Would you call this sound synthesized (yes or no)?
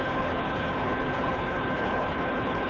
yes